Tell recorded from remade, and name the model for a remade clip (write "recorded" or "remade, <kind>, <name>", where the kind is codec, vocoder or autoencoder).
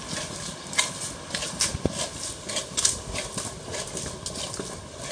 recorded